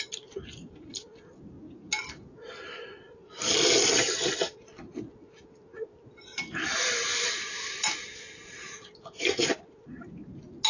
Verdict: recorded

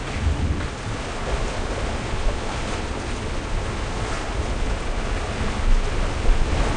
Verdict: recorded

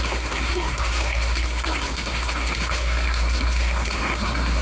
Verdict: remade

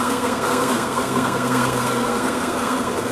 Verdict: remade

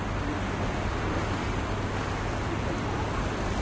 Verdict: recorded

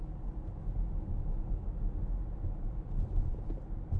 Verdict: recorded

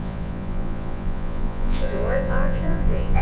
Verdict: remade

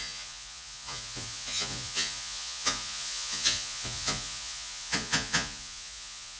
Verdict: remade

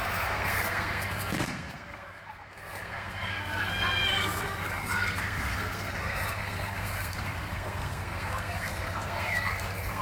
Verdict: remade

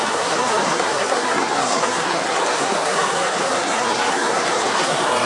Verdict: remade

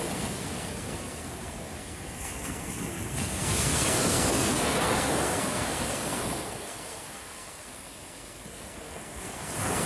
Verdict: remade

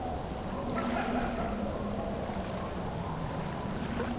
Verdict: recorded